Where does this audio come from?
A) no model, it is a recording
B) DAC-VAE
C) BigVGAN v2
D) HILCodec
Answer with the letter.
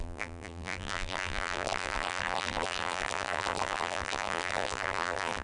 C